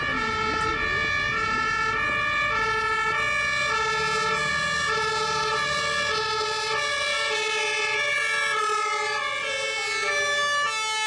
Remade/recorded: recorded